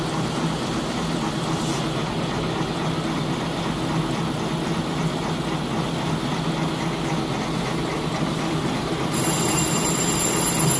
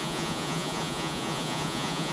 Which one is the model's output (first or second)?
second